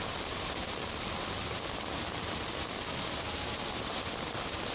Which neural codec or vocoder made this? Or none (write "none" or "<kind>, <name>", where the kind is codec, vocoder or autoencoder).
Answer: none